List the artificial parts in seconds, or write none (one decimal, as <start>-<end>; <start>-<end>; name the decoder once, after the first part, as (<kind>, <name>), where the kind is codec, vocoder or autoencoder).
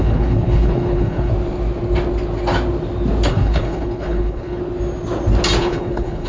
0.0-1.3 (codec, HILCodec); 3.3-4.6; 5.6-6.3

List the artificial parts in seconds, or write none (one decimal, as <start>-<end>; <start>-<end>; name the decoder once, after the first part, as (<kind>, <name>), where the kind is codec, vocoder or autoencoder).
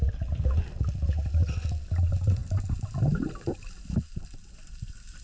none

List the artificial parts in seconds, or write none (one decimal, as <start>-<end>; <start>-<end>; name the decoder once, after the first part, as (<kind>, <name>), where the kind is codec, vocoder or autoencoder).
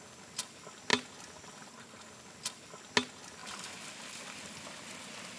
none